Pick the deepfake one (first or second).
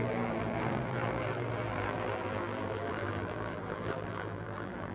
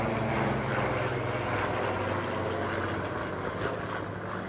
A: first